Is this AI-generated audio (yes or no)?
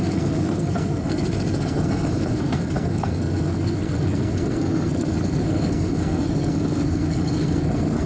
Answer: yes